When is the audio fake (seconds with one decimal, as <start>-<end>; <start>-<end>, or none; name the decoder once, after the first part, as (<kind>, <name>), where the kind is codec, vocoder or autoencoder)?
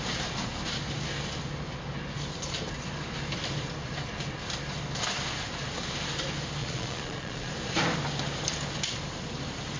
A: 6.6-7.5 (vocoder, Vocos)